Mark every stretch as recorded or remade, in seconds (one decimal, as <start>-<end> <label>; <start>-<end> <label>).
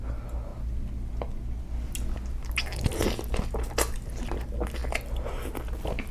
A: 0.0-6.1 recorded